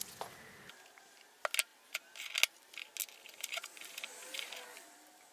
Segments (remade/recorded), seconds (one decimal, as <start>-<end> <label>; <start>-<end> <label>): 0.0-5.3 recorded